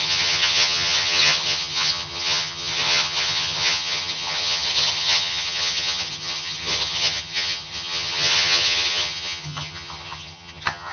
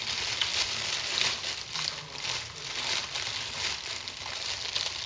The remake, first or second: first